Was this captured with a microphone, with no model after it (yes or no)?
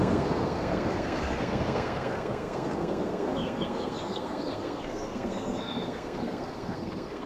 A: no